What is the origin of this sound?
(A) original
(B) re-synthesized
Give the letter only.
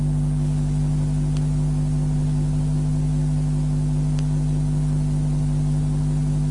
A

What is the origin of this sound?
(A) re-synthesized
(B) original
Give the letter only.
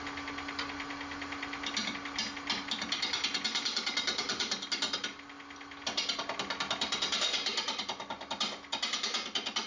B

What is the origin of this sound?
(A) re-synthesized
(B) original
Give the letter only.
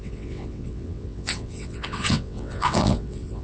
A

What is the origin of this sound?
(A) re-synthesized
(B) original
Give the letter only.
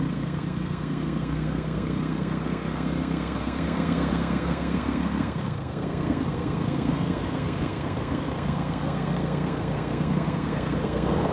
A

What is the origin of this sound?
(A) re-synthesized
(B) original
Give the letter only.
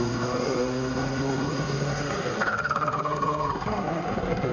A